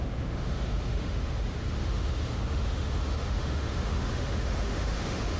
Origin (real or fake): fake